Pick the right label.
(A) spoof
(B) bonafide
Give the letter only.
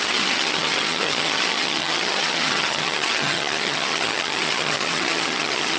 A